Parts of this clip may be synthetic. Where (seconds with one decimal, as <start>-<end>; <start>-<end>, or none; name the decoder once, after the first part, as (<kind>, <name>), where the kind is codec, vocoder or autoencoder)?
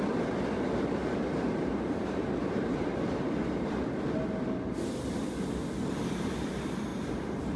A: 1.0-3.8 (vocoder, BigVGAN v2)